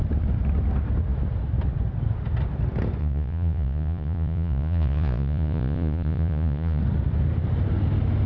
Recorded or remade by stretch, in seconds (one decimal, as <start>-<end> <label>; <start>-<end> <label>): 0.0-3.0 recorded; 3.0-6.8 remade; 6.8-8.3 recorded